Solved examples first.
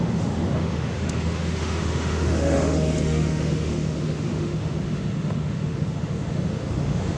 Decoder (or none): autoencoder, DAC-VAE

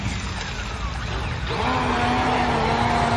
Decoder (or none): none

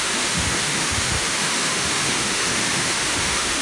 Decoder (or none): autoencoder, DAC-VAE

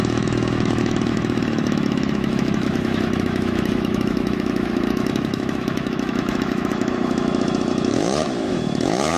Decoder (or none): autoencoder, DAC-VAE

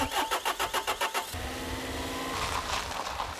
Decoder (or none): none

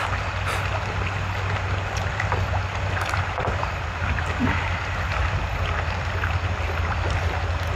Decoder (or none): none